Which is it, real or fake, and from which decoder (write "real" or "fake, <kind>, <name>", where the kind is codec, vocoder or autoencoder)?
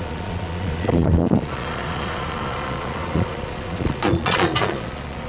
fake, vocoder, Vocos